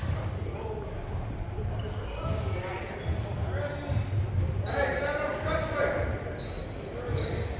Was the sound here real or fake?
real